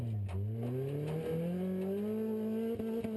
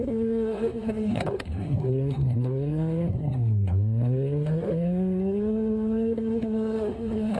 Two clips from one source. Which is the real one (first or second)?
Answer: first